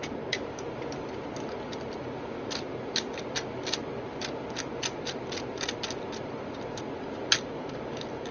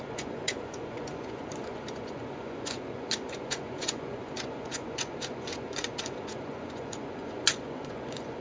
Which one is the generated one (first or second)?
second